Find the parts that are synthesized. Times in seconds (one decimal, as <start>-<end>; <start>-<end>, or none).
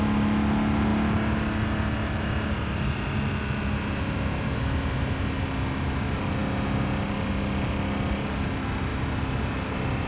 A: none